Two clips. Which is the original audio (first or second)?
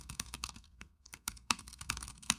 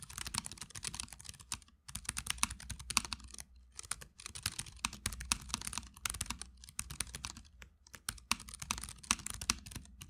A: second